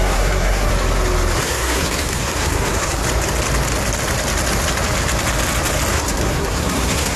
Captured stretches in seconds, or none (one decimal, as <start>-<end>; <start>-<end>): 0.7-1.4; 3.0-5.9